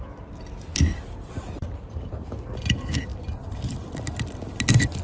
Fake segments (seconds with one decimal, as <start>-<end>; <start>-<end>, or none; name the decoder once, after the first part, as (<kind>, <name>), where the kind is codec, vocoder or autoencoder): none